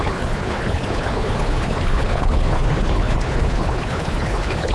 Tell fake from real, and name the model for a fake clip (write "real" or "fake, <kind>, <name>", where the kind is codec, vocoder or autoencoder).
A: fake, codec, HILCodec